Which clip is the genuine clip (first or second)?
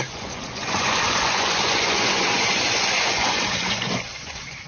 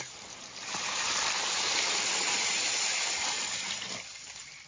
second